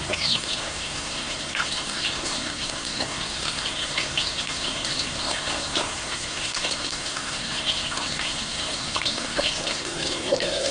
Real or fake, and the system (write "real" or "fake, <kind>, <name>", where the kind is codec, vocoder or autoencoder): fake, codec, SNAC